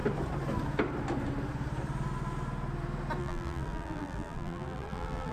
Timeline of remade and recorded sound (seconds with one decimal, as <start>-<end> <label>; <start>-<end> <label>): 0.0-3.2 recorded; 3.2-5.3 remade